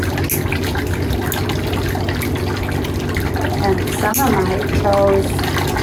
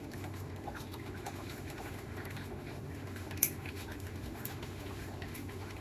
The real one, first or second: first